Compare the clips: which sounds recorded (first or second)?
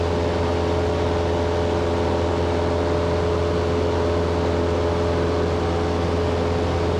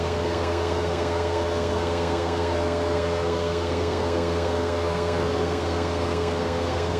first